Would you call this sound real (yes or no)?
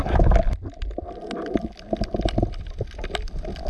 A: yes